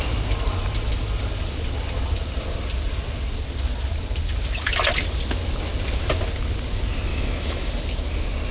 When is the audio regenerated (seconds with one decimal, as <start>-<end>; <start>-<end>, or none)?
7.1-7.7